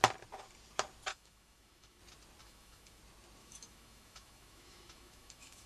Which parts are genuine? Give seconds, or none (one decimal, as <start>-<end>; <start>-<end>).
0.0-1.1; 2.0-2.4; 3.0-3.4